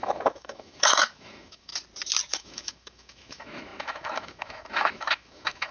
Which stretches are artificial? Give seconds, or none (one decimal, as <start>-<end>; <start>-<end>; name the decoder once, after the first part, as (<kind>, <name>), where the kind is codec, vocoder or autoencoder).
0.0-1.7 (autoencoder, DAC-VAE); 2.3-5.7